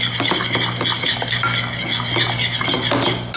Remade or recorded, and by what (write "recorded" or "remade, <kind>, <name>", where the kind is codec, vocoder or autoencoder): recorded